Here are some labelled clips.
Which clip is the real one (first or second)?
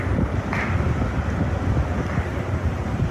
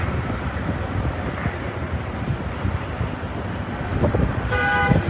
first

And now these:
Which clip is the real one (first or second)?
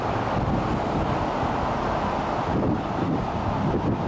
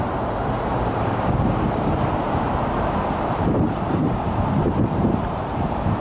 first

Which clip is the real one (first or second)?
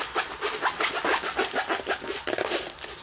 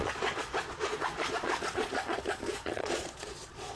first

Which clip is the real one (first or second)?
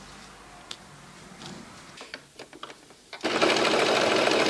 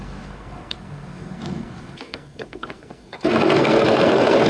first